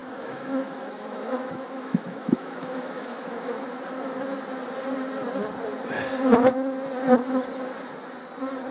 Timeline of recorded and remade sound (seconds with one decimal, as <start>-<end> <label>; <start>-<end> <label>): 0.0-3.6 remade; 3.6-8.7 recorded